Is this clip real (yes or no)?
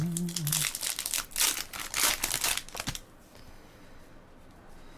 yes